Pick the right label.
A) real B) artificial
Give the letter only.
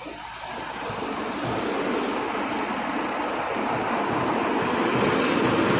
A